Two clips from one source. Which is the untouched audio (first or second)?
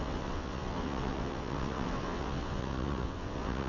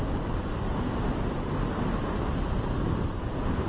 second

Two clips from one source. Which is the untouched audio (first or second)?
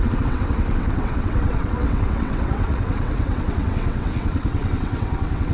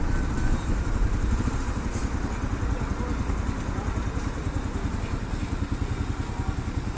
second